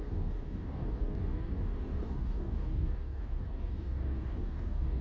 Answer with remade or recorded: remade